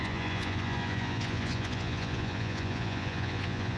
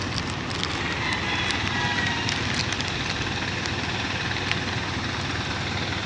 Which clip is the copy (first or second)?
first